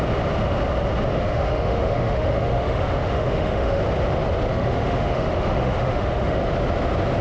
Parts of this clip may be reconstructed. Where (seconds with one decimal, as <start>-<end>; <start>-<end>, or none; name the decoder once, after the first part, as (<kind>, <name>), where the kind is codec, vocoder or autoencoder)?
1.1-3.8 (autoencoder, DAC-VAE); 4.5-6.4